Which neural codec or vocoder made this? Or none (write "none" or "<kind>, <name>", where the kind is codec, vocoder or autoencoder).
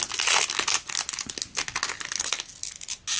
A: none